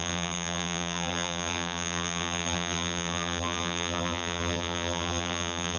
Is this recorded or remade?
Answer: remade